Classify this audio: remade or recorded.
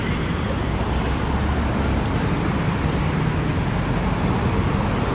recorded